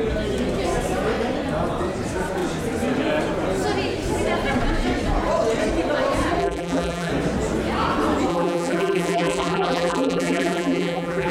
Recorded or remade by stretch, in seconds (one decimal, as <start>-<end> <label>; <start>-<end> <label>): 0.0-6.4 recorded; 6.4-7.1 remade; 7.1-8.3 recorded; 8.3-11.3 remade